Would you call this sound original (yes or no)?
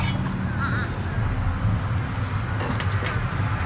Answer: yes